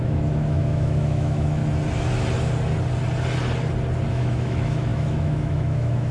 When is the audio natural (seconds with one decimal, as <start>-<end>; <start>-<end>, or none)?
1.6-4.1